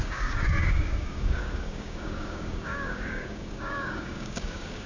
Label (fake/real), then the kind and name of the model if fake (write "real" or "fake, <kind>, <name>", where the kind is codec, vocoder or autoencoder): fake, codec, DAC